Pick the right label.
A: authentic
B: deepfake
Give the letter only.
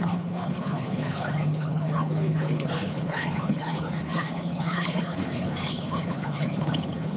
B